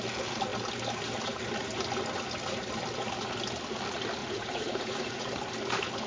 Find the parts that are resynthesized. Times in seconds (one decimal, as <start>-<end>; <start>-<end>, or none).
4.2-5.3